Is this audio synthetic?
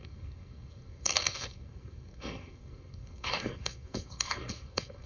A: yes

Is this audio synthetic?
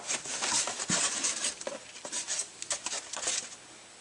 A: no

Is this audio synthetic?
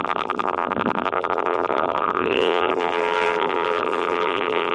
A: yes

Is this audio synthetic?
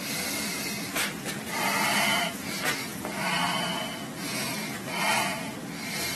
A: no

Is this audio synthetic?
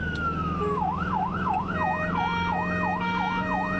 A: yes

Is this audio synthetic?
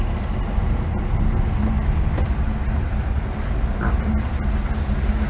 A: no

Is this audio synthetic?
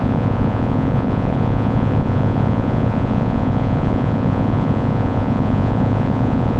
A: yes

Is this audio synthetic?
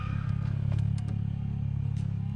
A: yes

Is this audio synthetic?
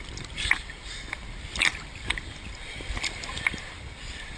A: no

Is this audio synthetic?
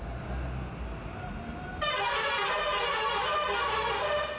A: no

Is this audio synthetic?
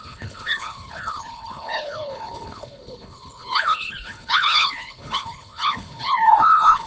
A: yes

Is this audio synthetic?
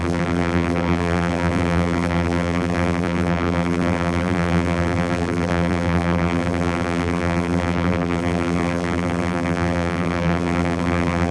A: yes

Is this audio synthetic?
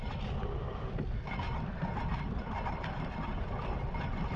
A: yes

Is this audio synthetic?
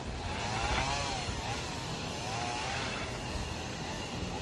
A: no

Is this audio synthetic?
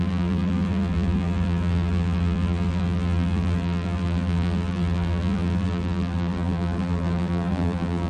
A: yes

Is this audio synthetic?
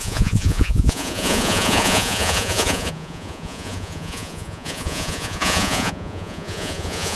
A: yes